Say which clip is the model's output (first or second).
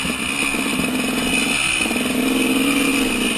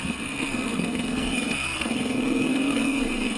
second